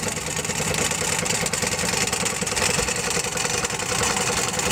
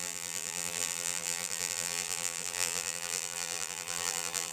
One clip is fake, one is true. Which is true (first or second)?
first